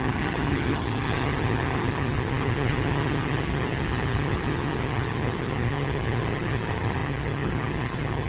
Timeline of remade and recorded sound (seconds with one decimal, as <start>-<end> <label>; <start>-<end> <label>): 0.0-8.3 remade